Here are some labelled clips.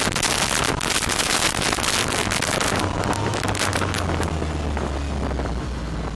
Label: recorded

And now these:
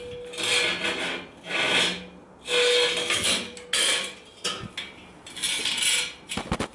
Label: recorded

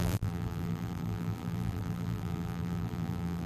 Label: remade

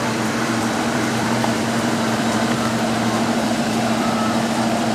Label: remade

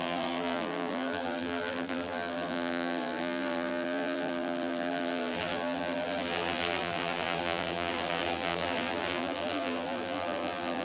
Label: remade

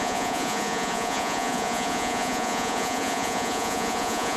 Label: remade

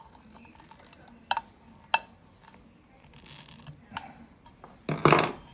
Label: recorded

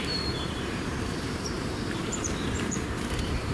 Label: remade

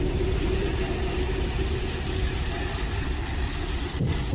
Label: remade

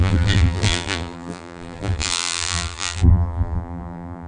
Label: remade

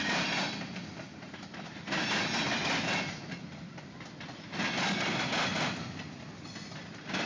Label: recorded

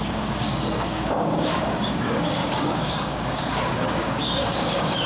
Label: remade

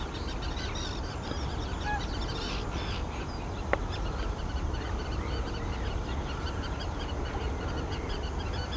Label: recorded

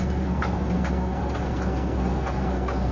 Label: remade